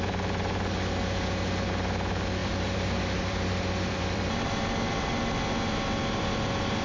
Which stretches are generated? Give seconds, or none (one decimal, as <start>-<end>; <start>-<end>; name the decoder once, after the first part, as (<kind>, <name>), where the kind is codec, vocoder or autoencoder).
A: 2.4-5.3 (vocoder, BigVGAN v2)